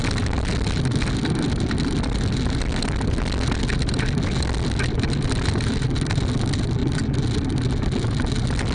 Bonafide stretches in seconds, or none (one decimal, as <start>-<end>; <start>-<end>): 0.0-8.7

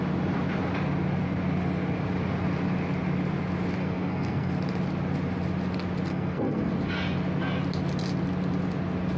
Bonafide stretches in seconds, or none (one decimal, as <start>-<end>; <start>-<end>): 0.0-3.8; 4.5-6.1; 6.7-9.2